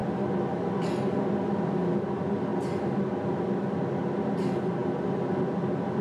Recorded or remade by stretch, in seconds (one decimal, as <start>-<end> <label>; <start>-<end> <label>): 0.0-6.0 recorded